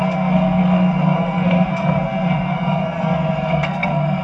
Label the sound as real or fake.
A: fake